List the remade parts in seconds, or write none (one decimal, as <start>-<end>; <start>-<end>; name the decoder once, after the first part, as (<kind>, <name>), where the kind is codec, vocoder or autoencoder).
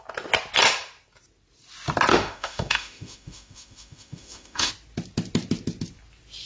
2.1-4.7 (autoencoder, DAC-VAE)